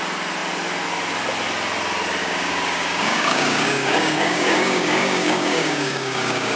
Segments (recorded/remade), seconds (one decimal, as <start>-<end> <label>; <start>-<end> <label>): 0.0-2.2 recorded; 2.2-6.6 remade